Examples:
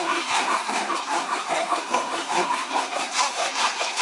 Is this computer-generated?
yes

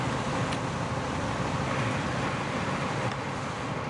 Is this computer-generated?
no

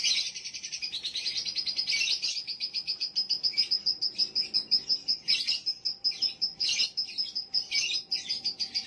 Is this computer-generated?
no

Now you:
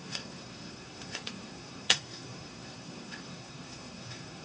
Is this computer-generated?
yes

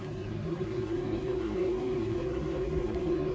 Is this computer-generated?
yes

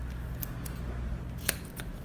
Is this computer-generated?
no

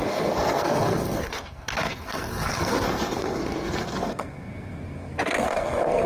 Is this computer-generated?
yes